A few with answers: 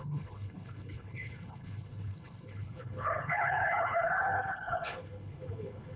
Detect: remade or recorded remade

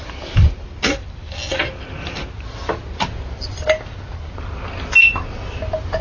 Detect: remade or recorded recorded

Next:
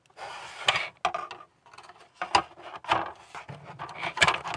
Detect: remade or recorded recorded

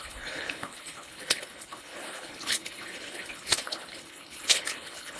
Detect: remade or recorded remade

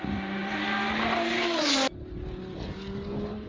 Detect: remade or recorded recorded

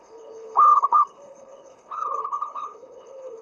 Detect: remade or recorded remade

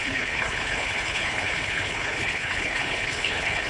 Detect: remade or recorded remade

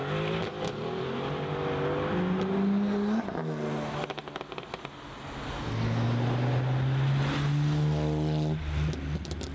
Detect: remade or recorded recorded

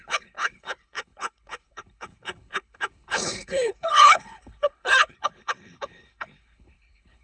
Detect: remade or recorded remade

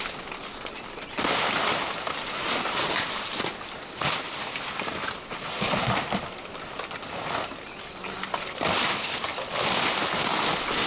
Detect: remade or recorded recorded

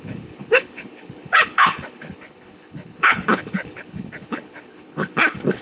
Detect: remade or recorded remade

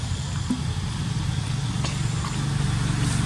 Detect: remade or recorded recorded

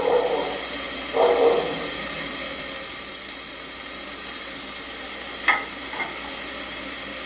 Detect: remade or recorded recorded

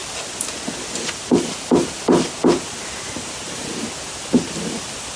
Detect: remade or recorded recorded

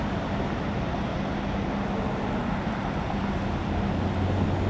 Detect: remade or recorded recorded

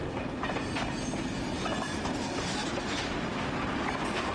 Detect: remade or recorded recorded